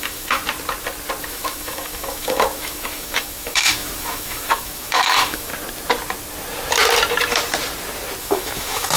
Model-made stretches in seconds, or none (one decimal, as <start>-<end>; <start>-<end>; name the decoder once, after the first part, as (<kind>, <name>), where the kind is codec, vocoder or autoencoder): 0.0-0.4 (autoencoder, DAC-VAE); 1.2-5.5; 8.2-9.0